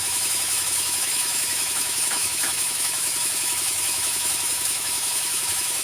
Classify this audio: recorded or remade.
remade